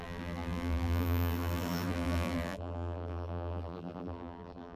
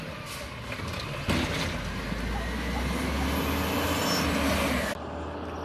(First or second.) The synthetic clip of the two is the first